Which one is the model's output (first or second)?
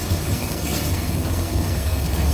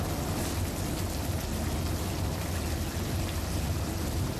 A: first